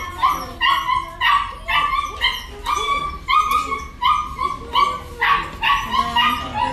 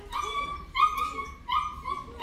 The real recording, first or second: first